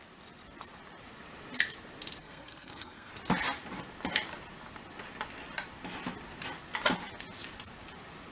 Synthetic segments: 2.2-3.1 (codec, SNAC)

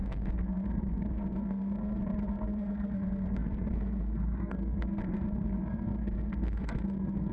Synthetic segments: 0.0-7.3 (codec, SNAC)